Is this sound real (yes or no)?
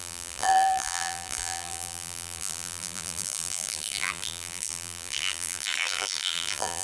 no